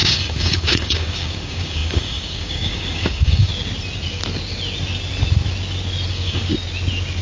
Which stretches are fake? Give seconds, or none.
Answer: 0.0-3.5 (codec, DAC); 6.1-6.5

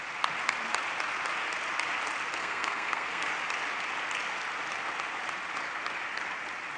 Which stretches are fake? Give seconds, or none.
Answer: 2.4-3.3 (codec, SNAC)

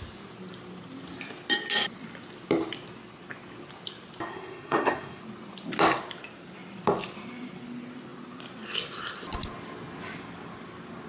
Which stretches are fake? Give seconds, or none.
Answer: 4.3-5.2 (codec, SNAC)

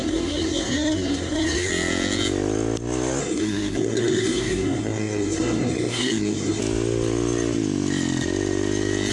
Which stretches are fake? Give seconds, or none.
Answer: 0.0-1.7 (codec, SNAC); 3.2-6.6